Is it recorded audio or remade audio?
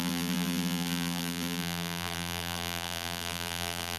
remade